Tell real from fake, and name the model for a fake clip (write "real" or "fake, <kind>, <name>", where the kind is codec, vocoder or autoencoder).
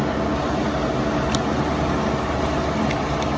real